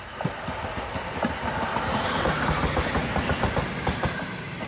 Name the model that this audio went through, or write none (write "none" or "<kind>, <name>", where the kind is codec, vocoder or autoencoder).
none